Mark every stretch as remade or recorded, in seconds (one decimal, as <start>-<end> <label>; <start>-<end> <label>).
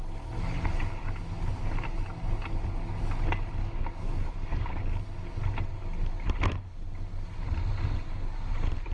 0.0-3.6 recorded; 3.6-4.7 remade; 4.7-8.9 recorded